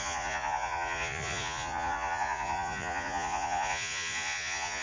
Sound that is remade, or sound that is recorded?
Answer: remade